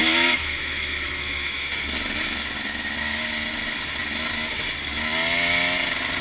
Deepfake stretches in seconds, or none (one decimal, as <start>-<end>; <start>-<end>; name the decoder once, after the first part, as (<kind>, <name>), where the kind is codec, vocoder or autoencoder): 0.0-1.7 (autoencoder, DAC-VAE)

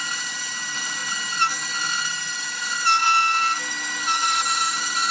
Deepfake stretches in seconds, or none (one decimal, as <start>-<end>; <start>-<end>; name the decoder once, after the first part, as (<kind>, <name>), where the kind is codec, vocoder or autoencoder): 0.0-1.0 (vocoder, BigVGAN v2); 2.4-3.0; 4.2-5.1